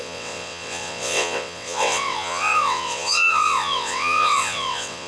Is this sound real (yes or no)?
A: no